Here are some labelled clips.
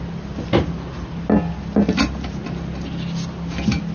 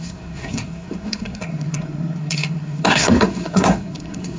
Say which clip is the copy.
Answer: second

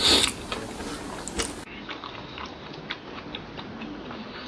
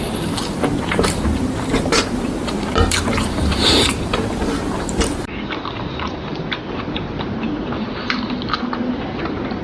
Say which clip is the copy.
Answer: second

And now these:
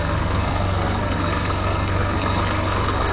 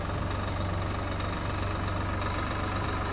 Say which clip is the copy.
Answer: first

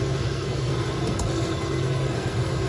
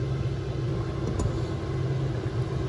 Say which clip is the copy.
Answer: first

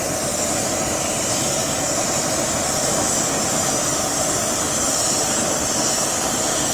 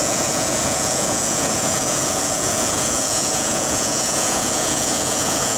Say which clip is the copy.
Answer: second